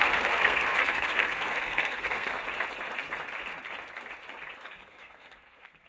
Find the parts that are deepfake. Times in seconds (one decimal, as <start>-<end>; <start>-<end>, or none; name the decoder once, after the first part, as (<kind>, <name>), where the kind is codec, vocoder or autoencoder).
0.0-2.3 (codec, SNAC); 4.7-5.9